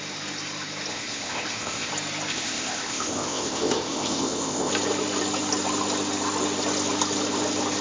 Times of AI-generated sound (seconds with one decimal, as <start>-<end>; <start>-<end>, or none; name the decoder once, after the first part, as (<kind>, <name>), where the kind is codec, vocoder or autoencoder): 0.9-1.9 (codec, ZipCodec); 2.3-4.7